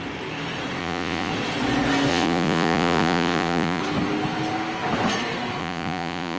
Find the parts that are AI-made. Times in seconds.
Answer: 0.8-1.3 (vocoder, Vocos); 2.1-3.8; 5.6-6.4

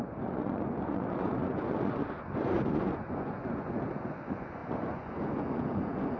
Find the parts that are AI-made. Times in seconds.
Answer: 0.0-6.2 (vocoder, Vocos)

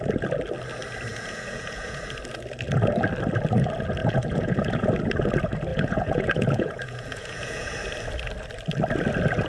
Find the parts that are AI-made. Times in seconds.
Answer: 1.1-2.0 (vocoder, Vocos); 4.0-4.9; 5.7-7.7